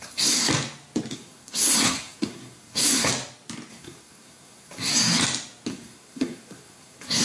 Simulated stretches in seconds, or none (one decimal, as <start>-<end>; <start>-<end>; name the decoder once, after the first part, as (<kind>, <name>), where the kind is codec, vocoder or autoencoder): 0.0-0.5 (codec, SNAC); 1.1-3.1; 3.7-4.9; 5.7-7.2